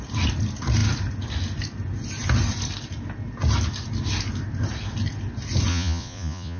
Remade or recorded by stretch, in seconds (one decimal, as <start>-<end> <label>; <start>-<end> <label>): 0.0-5.7 recorded; 5.7-6.6 remade